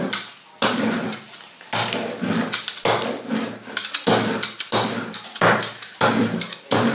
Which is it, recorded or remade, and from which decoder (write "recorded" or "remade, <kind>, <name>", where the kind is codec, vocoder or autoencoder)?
recorded